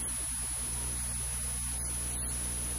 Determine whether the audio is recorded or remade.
recorded